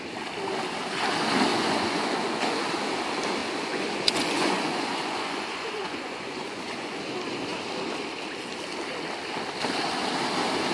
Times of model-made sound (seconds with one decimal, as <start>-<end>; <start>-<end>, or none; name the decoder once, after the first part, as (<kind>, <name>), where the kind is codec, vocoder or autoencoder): 1.5-2.6 (vocoder, Vocos); 3.4-7.0